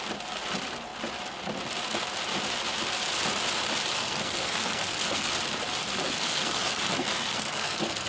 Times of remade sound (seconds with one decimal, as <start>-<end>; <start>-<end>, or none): 3.9-5.3; 5.9-8.1